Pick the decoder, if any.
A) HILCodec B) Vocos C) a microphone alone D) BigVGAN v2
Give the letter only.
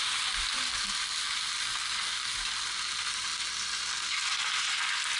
C